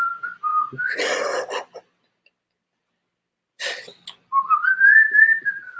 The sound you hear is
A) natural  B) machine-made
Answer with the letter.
A